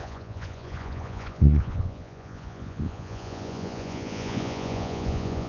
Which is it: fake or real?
fake